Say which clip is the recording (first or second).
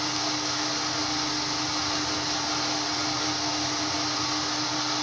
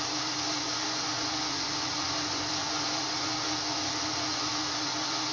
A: first